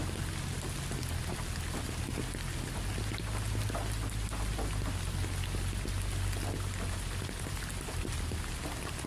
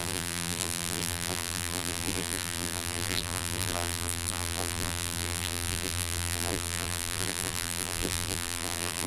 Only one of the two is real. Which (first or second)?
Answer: first